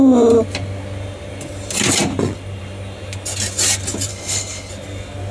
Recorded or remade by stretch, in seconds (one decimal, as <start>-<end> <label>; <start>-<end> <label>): 0.0-4.1 recorded; 4.1-4.7 remade; 4.7-5.3 recorded